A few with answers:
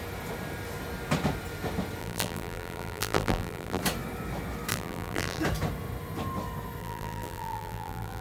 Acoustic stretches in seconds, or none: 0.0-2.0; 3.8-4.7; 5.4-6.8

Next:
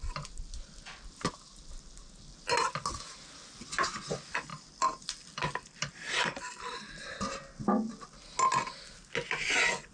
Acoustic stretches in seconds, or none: 0.0-4.5; 7.5-9.9

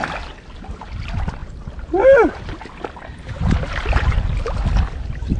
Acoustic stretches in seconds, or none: 0.5-5.4

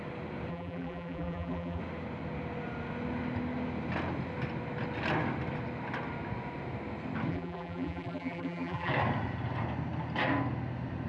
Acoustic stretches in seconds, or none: 0.0-0.5; 1.8-7.3; 8.9-11.1